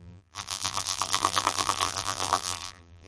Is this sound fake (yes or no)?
yes